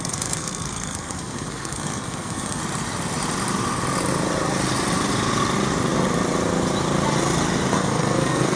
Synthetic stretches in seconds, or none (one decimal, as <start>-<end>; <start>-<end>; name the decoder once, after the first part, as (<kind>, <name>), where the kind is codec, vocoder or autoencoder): 0.0-2.6 (codec, SNAC); 7.7-8.6